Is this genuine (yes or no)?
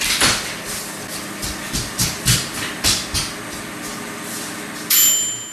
yes